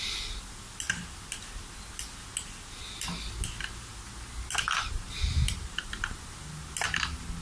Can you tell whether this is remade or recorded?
recorded